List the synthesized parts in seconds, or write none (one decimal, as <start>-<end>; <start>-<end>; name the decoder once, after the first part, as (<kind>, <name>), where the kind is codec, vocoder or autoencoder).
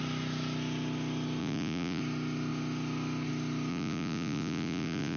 1.4-2.0 (vocoder, Vocos); 3.7-5.2